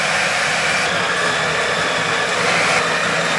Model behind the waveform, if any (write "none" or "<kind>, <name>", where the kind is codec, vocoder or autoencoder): none